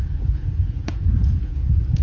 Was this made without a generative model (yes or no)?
no